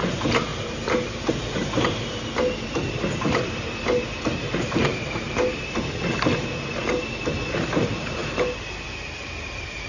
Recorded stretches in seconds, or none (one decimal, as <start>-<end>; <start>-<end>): 6.8-7.5; 8.2-9.2